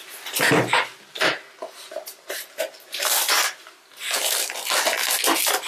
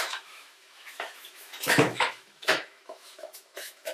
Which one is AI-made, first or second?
second